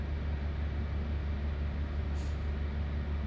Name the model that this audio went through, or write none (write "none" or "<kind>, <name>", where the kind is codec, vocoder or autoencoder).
none